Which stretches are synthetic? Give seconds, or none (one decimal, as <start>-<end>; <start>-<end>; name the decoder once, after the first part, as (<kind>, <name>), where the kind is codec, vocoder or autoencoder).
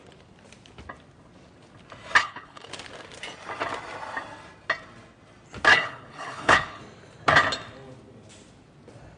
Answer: 2.2-2.7 (codec, HILCodec); 5.7-6.8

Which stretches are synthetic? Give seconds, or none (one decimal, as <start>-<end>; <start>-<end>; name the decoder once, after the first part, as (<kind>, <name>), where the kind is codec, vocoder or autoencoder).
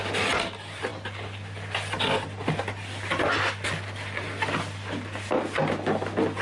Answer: none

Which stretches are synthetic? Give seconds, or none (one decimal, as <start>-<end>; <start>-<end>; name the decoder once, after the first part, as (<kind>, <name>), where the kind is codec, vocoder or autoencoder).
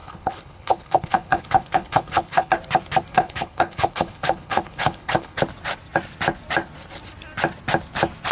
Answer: 0.0-2.5 (codec, HILCodec); 3.1-5.4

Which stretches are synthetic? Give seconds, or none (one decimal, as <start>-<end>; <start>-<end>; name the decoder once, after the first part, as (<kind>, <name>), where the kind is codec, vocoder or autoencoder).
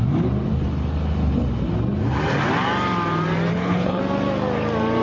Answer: 3.5-4.0 (codec, HILCodec)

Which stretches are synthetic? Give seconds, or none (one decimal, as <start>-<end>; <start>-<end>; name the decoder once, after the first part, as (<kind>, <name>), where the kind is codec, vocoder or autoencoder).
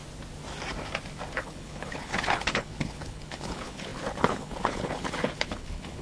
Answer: 1.3-6.0 (codec, HILCodec)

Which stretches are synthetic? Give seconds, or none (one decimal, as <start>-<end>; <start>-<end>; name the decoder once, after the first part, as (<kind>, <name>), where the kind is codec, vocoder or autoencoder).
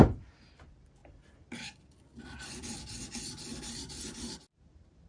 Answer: none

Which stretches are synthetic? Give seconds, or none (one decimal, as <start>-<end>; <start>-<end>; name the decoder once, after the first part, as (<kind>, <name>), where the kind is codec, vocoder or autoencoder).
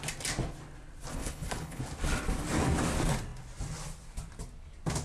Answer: 1.1-1.8 (codec, HILCodec)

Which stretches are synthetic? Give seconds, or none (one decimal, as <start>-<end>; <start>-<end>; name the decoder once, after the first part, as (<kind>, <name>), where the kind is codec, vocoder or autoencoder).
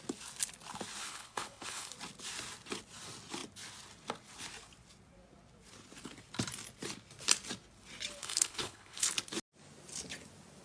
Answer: 1.0-1.9 (codec, HILCodec); 8.2-9.1